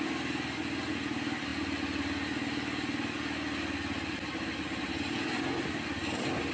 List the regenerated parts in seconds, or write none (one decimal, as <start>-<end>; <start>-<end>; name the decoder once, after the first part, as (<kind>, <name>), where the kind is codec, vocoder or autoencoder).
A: none